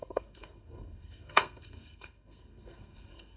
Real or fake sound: fake